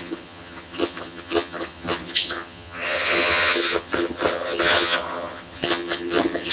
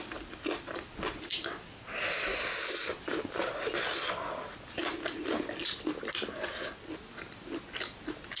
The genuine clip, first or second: second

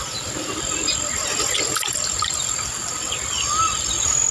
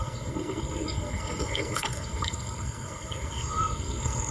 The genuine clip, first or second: first